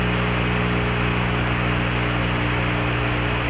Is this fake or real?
real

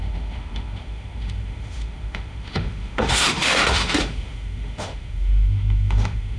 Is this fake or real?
fake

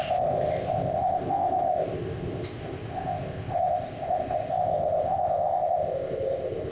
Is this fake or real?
fake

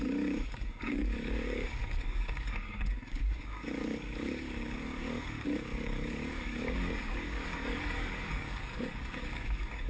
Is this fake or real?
fake